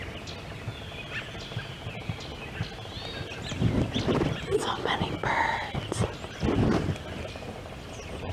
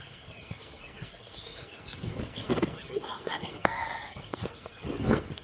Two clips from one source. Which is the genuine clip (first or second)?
first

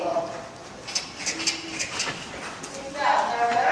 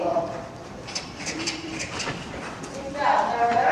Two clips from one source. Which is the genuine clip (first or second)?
first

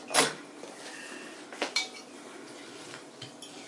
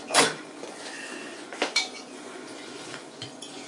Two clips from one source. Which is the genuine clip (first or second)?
first